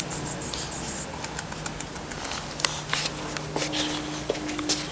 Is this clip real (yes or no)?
yes